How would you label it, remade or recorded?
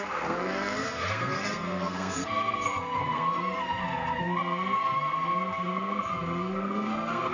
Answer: remade